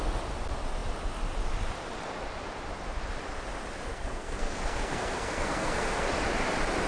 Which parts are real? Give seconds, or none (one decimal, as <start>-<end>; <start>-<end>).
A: 0.0-3.9; 6.1-6.9